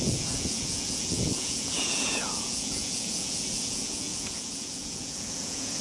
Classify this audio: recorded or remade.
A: remade